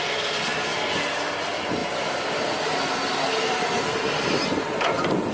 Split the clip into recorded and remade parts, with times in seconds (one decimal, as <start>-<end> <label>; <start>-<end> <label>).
0.0-5.3 recorded